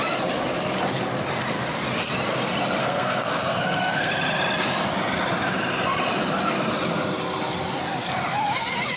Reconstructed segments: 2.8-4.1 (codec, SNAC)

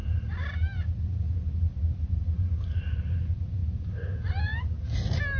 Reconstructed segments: none

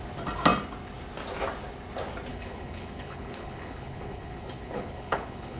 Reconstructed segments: 2.3-5.6 (codec, HILCodec)

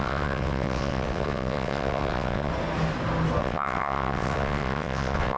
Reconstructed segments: 0.0-2.5 (vocoder, WaveNeXt); 3.4-5.4

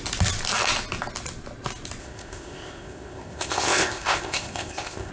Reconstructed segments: 2.0-5.1 (codec, ZipCodec)